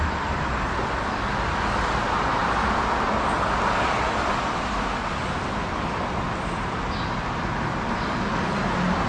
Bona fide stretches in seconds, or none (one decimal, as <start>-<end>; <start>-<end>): 0.0-9.1